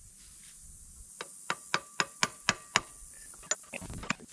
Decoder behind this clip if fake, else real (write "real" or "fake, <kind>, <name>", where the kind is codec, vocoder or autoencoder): real